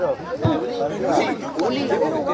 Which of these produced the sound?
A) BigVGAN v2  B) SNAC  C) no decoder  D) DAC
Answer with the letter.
C